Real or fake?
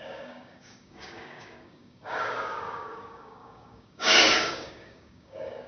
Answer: fake